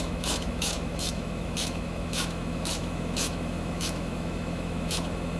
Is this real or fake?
fake